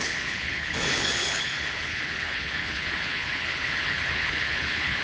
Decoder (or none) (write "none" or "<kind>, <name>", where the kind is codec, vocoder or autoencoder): codec, HILCodec